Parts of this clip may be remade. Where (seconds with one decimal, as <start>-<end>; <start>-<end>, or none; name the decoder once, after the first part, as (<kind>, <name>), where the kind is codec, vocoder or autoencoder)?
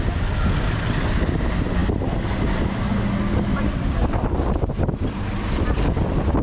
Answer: none